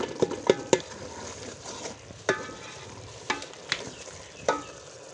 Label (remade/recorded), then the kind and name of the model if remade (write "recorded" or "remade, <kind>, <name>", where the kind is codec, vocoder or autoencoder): recorded